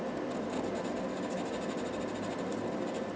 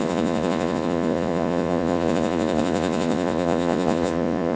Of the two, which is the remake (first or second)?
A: second